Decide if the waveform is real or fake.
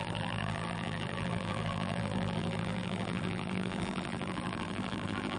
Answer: fake